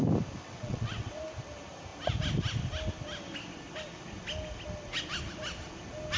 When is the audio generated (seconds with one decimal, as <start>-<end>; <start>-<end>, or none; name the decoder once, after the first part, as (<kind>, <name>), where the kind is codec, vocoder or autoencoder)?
0.4-1.2 (vocoder, WaveNeXt)